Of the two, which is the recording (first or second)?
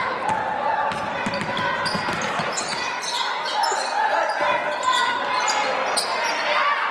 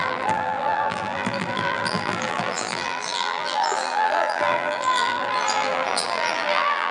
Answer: first